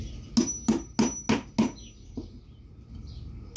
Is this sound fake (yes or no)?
no